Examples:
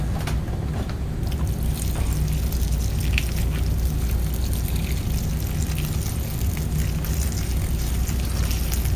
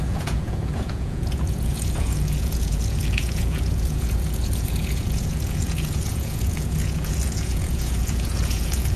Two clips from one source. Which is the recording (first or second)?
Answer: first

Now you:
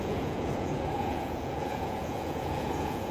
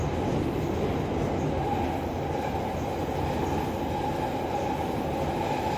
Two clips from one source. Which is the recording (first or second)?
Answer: second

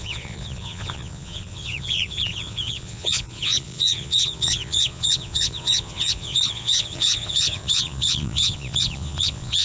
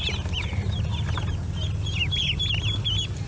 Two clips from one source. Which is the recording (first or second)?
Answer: second